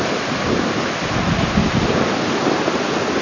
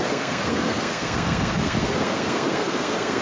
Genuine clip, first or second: first